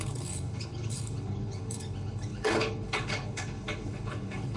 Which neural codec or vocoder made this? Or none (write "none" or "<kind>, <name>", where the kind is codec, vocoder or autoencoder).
codec, HILCodec